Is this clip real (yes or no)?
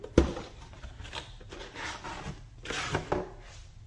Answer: yes